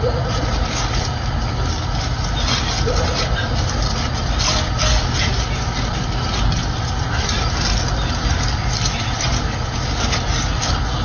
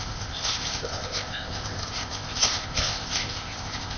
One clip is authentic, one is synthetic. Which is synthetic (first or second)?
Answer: second